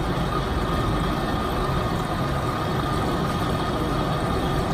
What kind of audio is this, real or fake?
real